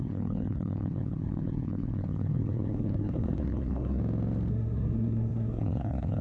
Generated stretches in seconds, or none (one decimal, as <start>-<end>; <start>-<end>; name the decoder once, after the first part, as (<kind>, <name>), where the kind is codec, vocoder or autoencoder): 0.0-4.0 (codec, SNAC); 4.5-6.2